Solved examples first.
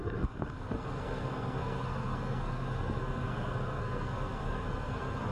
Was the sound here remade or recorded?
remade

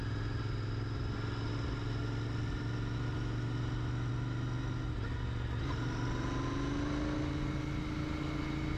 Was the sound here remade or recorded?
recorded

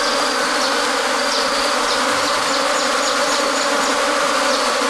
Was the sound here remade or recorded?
recorded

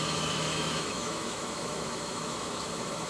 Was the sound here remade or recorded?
remade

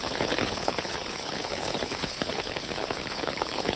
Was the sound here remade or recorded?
remade